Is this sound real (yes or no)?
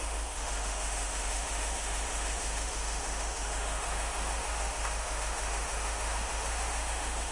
no